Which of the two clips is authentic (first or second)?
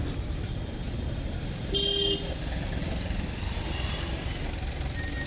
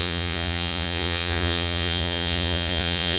first